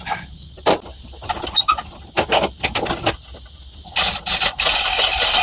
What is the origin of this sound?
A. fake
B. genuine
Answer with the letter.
B